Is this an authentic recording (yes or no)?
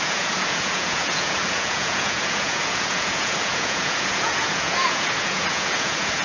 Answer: no